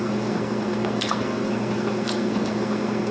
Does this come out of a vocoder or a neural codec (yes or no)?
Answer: yes